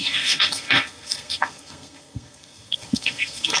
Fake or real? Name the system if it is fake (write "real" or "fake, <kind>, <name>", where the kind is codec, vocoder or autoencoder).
fake, codec, SNAC